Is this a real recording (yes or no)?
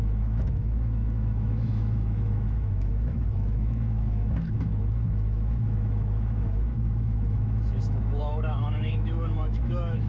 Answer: no